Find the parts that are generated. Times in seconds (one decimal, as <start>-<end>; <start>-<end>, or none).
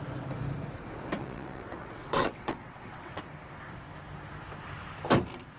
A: 1.2-3.2